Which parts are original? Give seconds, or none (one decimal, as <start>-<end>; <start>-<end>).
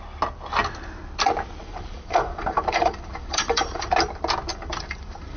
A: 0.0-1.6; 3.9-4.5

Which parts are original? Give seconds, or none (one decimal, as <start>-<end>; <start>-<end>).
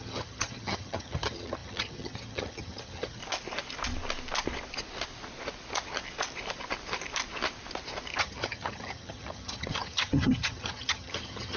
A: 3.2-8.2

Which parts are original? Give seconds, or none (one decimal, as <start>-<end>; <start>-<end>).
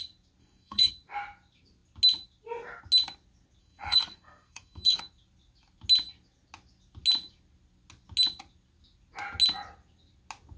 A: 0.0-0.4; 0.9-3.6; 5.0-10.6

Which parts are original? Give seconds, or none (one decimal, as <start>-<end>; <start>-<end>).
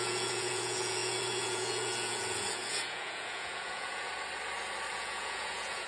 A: 4.1-4.9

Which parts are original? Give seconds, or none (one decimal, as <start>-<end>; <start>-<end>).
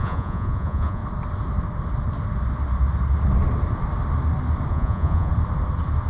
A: 1.0-4.7; 5.3-6.1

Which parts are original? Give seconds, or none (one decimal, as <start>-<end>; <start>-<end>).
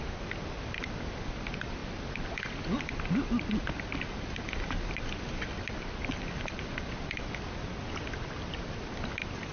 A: 0.0-9.5